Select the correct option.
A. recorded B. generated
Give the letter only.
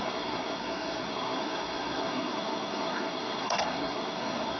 B